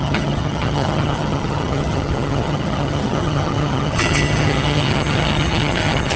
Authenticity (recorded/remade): remade